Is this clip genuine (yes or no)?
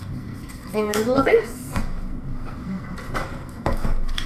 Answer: no